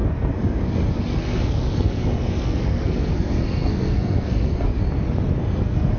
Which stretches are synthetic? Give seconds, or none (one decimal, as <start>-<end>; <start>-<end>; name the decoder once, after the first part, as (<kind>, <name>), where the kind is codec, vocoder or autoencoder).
0.0-4.8 (codec, SNAC); 5.4-6.0